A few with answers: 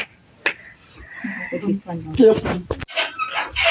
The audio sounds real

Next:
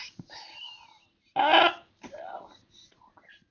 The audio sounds real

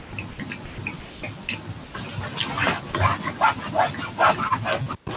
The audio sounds real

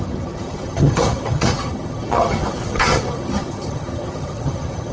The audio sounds fake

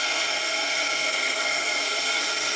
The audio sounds fake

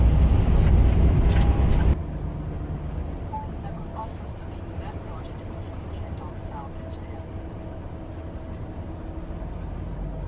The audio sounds real